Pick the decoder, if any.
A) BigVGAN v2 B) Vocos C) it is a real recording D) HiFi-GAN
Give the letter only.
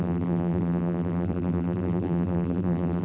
A